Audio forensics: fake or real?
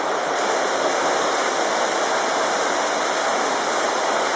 real